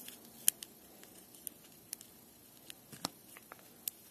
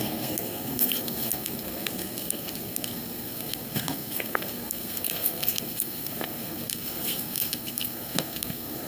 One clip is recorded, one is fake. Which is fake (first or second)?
second